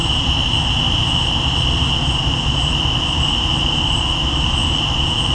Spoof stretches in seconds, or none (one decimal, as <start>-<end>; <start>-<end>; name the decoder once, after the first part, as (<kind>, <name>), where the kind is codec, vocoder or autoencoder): none